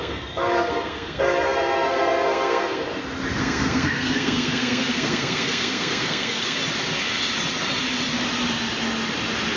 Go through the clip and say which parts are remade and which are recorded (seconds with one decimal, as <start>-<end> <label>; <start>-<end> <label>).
0.0-2.8 remade; 2.8-3.4 recorded; 3.4-6.6 remade; 6.6-9.6 recorded